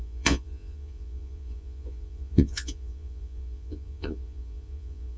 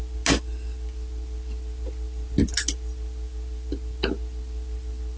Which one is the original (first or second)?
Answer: second